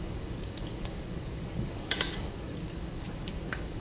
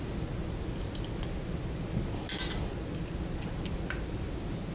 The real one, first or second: second